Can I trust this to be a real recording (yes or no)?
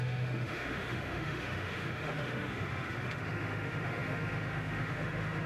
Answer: no